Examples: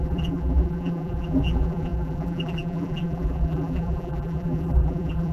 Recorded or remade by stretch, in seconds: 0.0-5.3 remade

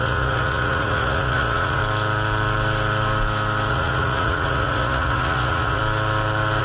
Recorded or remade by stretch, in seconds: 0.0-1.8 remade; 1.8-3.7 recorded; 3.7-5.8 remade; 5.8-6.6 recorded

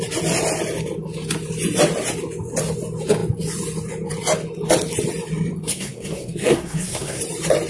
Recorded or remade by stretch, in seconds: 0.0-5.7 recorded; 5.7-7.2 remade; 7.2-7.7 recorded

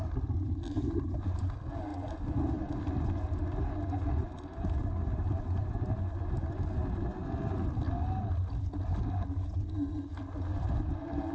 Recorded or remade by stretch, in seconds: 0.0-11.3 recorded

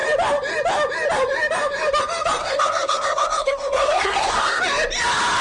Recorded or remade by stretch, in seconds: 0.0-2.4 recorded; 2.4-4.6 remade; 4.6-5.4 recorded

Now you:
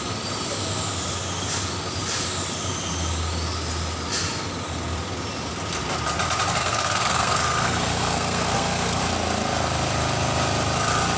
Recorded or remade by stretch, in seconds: 0.0-6.6 recorded; 6.6-9.0 remade; 9.0-11.2 recorded

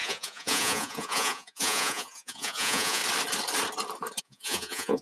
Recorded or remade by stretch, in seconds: 0.0-3.0 remade; 3.0-4.2 recorded; 4.2-5.0 remade

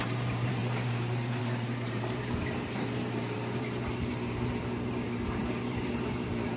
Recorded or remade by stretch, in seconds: 0.0-6.6 remade